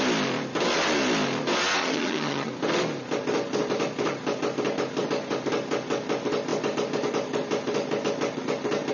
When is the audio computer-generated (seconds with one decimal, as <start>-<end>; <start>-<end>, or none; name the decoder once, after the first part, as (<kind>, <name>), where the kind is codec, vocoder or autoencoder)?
1.8-2.5 (vocoder, HiFi-GAN)